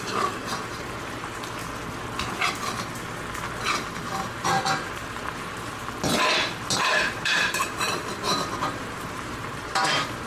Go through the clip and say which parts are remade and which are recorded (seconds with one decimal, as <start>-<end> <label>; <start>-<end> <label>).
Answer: 0.0-1.6 remade; 1.6-4.3 recorded; 4.3-5.7 remade; 5.7-6.8 recorded; 6.8-10.3 remade